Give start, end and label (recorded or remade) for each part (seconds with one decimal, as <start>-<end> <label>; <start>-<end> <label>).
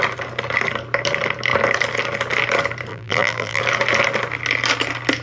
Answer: 0.0-2.9 recorded; 2.9-3.6 remade; 3.6-5.2 recorded